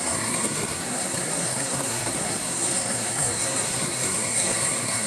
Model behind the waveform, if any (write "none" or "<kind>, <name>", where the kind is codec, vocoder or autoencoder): codec, SNAC